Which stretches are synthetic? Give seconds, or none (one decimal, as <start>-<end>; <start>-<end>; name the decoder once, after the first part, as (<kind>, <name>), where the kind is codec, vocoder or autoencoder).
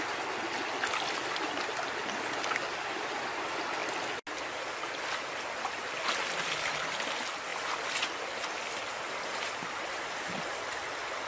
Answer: none